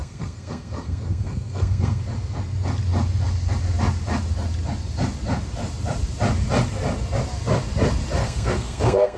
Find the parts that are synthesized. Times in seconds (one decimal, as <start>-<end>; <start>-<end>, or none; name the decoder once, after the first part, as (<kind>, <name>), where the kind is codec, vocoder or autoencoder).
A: 0.0-2.0 (codec, SNAC); 8.2-9.2